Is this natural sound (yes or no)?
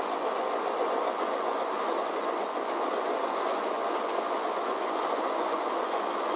no